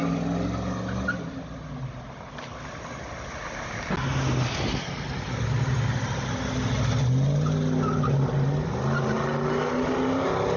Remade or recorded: recorded